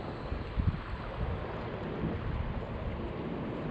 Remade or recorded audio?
recorded